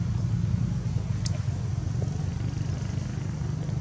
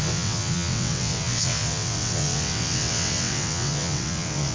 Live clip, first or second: first